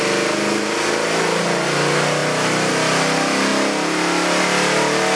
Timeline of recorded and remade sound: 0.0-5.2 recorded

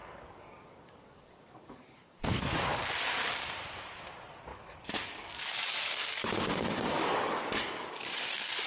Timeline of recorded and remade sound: 0.0-2.5 remade; 2.5-4.5 recorded; 4.5-8.7 remade

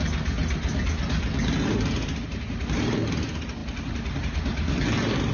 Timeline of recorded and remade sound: 0.0-2.1 recorded; 2.1-2.8 remade; 2.8-5.3 recorded

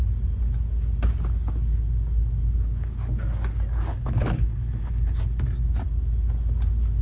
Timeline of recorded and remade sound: 0.0-3.9 recorded; 3.9-5.2 remade; 5.2-7.0 recorded

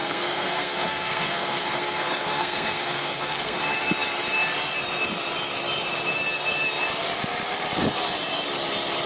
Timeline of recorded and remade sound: 0.0-3.6 remade; 3.6-9.1 recorded

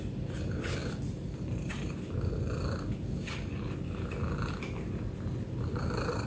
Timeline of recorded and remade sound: 0.0-6.3 recorded

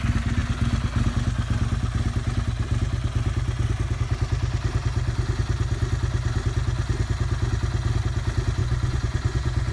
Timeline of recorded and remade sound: 0.0-8.6 recorded; 8.6-9.7 remade

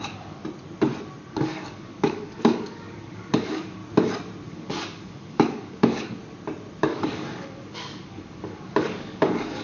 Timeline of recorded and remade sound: 0.0-0.4 remade; 0.4-1.3 recorded; 1.3-3.8 remade; 3.8-4.5 recorded; 4.5-6.2 remade; 6.2-6.8 recorded; 6.8-9.6 remade